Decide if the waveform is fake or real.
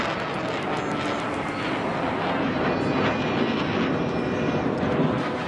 real